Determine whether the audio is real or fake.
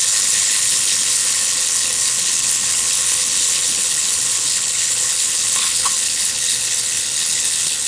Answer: fake